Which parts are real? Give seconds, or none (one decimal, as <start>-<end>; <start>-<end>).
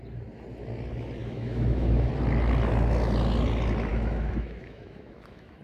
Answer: 0.0-1.2; 2.1-3.9